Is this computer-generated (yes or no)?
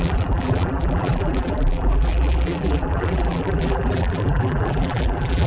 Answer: yes